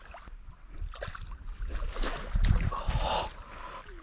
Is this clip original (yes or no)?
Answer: yes